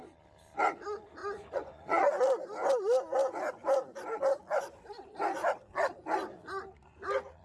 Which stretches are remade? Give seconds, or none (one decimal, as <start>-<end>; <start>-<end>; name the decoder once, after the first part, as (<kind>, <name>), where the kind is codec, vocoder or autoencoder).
1.2-2.1 (vocoder, Vocos)